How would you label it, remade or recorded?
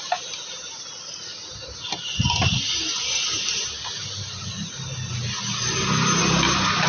recorded